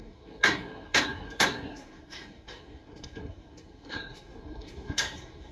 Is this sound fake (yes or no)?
yes